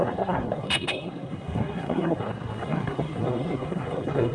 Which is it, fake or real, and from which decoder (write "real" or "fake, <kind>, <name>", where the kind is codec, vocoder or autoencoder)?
fake, codec, SNAC